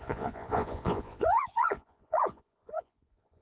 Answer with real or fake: fake